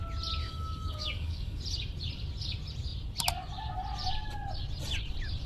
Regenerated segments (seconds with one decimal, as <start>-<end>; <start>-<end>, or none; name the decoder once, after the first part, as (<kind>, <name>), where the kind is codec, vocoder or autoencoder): 0.4-1.6 (codec, DAC)